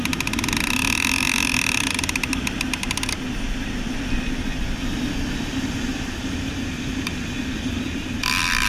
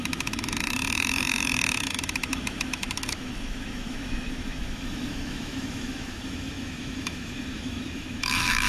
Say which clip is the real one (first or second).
first